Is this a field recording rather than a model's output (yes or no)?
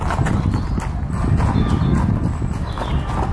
yes